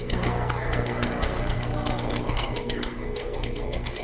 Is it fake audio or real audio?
fake